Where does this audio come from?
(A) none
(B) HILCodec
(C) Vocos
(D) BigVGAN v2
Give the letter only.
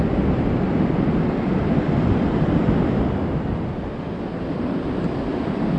A